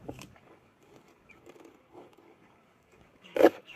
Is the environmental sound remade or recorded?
remade